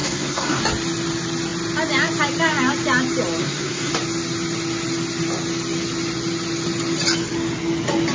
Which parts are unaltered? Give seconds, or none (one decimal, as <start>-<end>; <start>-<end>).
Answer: 0.6-3.4; 3.9-8.1